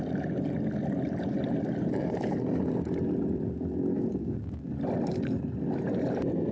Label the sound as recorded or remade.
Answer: recorded